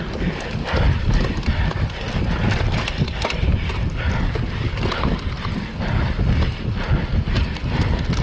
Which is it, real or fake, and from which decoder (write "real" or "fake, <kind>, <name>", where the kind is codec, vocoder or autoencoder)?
real